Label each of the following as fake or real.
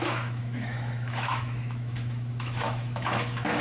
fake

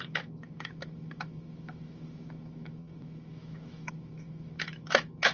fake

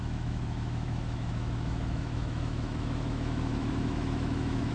fake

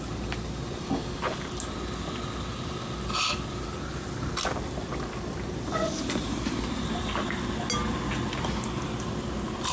real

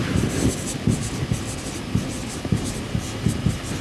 real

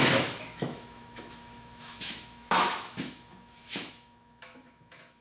fake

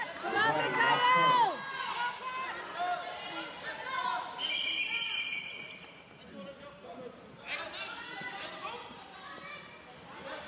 real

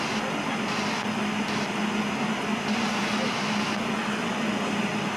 real